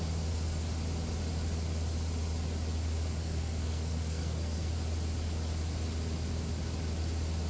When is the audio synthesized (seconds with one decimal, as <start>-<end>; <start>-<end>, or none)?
3.2-4.7